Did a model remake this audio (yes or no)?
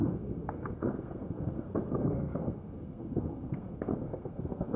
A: yes